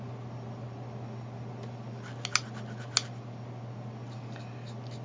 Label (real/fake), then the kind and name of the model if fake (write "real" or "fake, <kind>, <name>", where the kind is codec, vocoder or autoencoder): real